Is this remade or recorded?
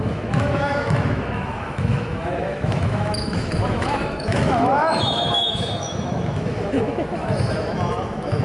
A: remade